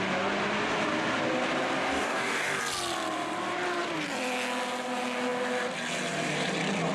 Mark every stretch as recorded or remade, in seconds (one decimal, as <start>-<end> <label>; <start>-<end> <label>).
0.0-1.9 recorded; 1.9-2.6 remade; 2.6-6.9 recorded